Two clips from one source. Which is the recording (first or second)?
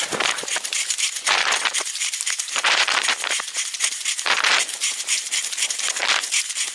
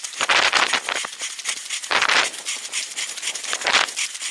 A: second